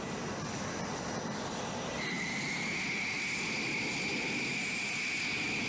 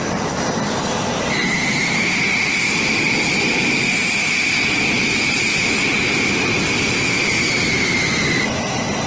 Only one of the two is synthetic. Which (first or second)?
second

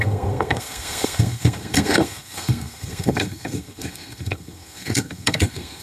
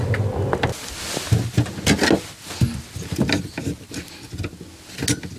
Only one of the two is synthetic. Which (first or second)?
first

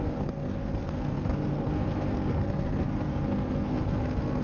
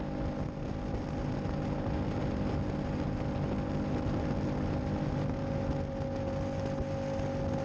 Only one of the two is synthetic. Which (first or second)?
first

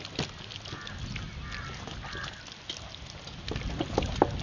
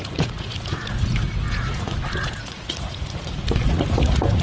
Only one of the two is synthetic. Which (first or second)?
second